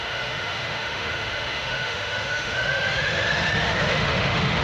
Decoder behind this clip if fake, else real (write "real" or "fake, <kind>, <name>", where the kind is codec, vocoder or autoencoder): fake, autoencoder, DAC-VAE